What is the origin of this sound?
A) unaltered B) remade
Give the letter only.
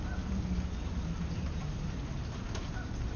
A